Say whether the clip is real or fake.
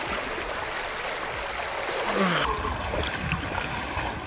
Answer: real